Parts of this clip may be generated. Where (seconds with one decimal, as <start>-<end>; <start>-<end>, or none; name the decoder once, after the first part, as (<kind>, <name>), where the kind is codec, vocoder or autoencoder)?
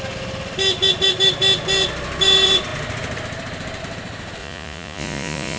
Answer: 4.4-5.6 (vocoder, Vocos)